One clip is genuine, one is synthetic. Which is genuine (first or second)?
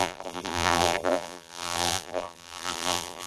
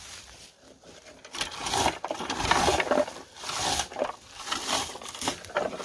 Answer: second